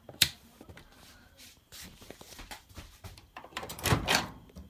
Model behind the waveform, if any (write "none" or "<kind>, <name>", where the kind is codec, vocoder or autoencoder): vocoder, BigVGAN v2